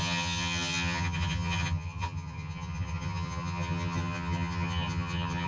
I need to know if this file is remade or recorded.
remade